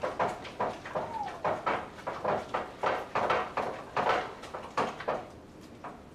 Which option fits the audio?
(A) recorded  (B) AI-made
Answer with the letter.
A